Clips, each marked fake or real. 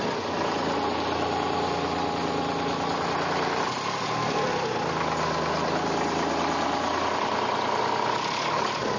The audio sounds real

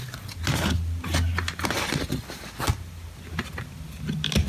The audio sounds real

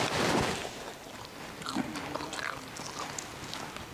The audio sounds real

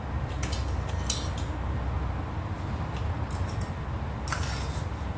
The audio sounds real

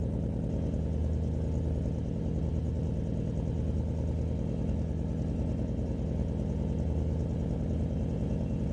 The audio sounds real